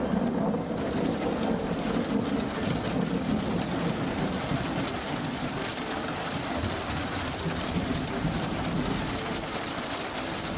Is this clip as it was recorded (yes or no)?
yes